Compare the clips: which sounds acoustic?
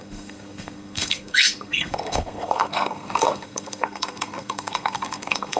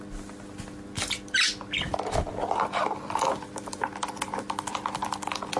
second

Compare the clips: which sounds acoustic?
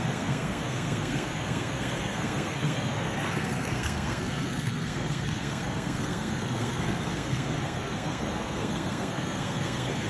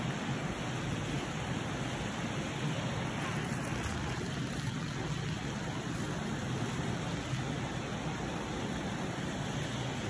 second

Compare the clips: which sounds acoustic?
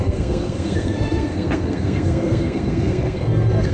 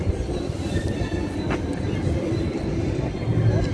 second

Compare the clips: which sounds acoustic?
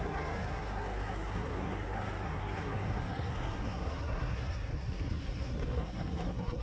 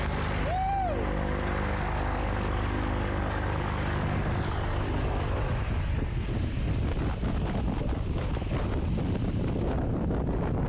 second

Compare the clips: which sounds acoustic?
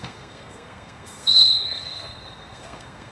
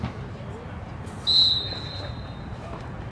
second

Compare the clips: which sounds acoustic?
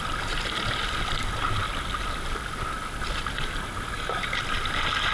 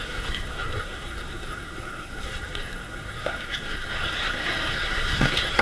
first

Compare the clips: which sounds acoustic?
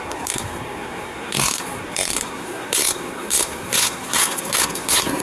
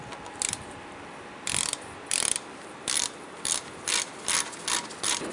second